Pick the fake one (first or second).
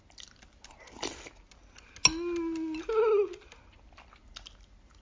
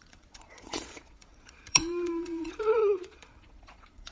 second